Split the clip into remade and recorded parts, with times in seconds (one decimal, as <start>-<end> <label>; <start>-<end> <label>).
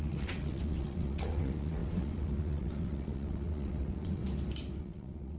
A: 0.0-4.2 remade; 4.2-4.8 recorded; 4.8-5.4 remade